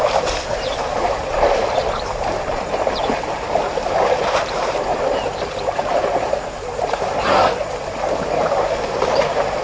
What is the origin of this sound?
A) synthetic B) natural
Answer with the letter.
A